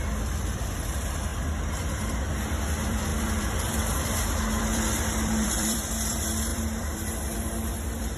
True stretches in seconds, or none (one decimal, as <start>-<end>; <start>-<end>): 1.3-2.6